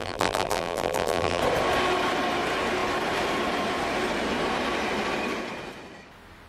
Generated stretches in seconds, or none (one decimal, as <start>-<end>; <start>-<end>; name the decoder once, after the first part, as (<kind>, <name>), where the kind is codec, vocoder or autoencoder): 0.0-1.4 (vocoder, BigVGAN v2)